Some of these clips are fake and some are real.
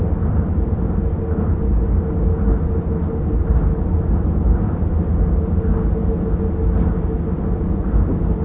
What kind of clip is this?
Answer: real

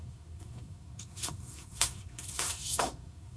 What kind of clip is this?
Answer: fake